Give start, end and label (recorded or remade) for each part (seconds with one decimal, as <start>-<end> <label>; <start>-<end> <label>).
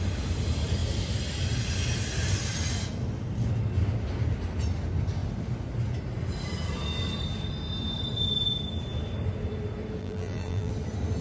0.0-10.0 recorded; 10.0-10.7 remade; 10.7-11.2 recorded